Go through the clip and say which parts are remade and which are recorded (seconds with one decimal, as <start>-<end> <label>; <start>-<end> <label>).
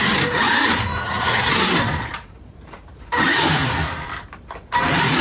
0.0-1.0 recorded; 1.0-1.5 remade; 1.5-5.2 recorded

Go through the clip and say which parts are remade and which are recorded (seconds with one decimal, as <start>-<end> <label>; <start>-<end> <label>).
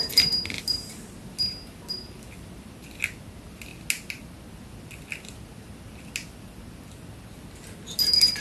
0.0-8.4 recorded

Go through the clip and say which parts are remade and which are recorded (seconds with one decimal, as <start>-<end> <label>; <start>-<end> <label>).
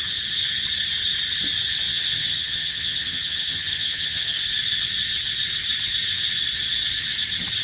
0.0-1.9 recorded; 1.9-4.4 remade; 4.4-7.6 recorded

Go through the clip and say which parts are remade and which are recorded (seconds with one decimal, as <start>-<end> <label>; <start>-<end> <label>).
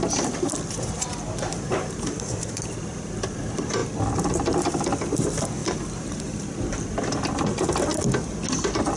0.0-1.5 recorded; 1.5-2.6 remade; 2.6-5.6 recorded; 5.6-6.5 remade; 6.5-9.0 recorded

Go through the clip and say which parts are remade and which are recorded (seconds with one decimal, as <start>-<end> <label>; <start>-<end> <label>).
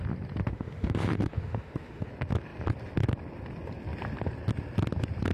0.0-0.5 recorded; 0.5-2.1 remade; 2.1-5.3 recorded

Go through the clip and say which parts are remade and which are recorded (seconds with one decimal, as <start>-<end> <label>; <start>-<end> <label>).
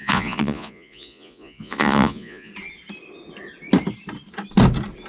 0.0-2.5 remade; 2.5-5.1 recorded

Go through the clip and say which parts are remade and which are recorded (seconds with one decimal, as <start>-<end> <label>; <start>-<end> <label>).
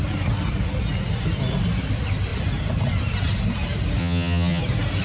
0.0-4.0 recorded; 4.0-4.6 remade; 4.6-5.0 recorded